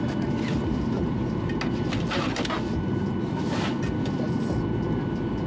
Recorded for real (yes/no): yes